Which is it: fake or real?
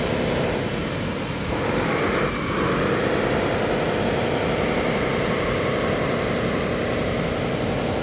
real